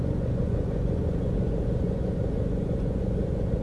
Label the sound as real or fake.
fake